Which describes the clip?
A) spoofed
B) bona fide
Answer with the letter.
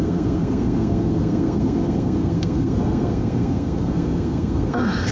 A